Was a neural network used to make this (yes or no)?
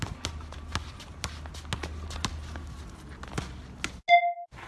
no